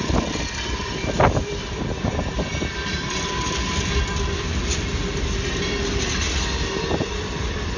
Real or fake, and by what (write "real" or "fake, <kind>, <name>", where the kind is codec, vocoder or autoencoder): fake, vocoder, BigVGAN v2